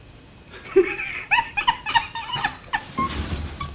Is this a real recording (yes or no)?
yes